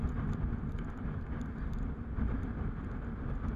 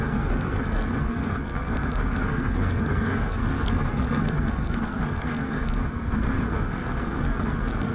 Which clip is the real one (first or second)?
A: first